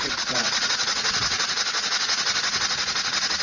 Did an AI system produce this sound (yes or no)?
yes